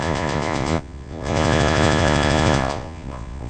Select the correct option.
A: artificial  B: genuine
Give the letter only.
A